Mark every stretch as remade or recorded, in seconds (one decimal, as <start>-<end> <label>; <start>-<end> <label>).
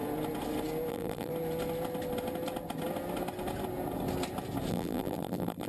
0.0-0.9 recorded; 0.9-1.3 remade; 1.3-4.7 recorded; 4.7-5.7 remade